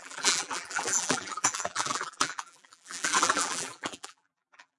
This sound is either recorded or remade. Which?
remade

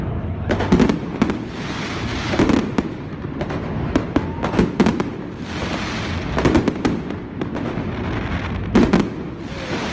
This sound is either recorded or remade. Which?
recorded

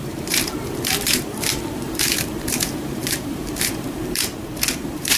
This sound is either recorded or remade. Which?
remade